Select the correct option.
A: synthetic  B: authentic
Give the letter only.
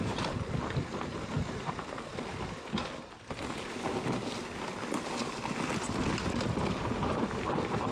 B